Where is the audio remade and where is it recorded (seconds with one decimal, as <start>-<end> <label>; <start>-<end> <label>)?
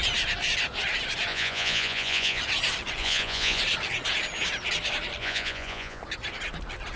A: 0.0-1.3 recorded; 1.3-2.4 remade; 2.4-3.0 recorded; 3.0-3.6 remade; 3.6-5.2 recorded; 5.2-6.0 remade; 6.0-7.0 recorded